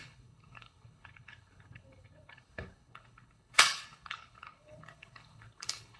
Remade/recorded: remade